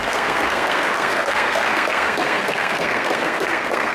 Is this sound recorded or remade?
remade